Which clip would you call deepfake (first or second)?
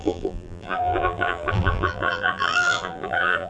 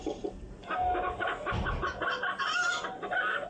first